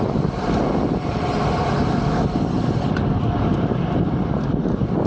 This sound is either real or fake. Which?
real